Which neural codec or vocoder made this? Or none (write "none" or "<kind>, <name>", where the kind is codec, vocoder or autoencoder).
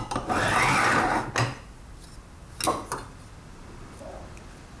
none